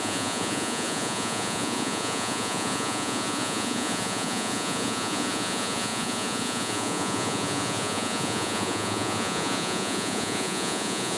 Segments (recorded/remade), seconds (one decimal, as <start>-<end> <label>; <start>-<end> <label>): 0.0-11.2 remade